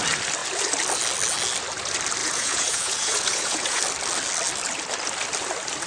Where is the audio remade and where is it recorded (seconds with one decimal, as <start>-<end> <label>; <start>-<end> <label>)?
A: 0.0-2.2 recorded; 2.2-3.8 remade; 3.8-5.9 recorded